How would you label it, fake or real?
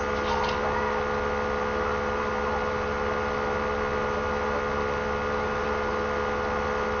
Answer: real